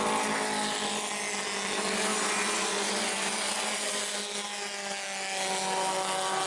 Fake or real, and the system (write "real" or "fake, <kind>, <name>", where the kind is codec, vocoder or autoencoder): real